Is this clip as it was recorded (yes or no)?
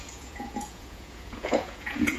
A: no